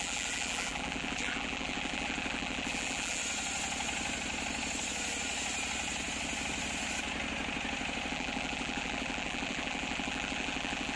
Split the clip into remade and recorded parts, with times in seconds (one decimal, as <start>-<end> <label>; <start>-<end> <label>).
0.0-3.2 remade; 3.2-8.1 recorded; 8.1-11.0 remade